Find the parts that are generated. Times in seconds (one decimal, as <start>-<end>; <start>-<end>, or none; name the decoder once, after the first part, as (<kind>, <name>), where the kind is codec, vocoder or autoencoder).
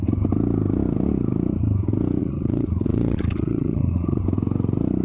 2.2-4.2 (vocoder, Vocos)